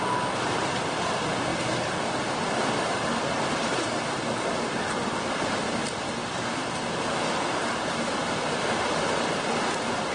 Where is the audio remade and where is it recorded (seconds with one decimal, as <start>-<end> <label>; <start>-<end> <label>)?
0.0-10.1 recorded